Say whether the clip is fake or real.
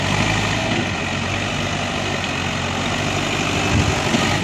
real